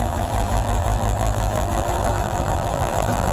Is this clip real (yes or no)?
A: no